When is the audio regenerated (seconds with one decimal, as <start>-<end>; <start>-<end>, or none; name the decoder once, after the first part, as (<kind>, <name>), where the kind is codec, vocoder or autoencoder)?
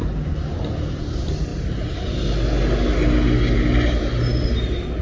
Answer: none